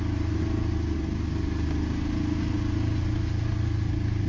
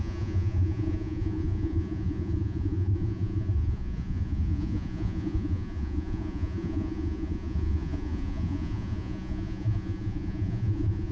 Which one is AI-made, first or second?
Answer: second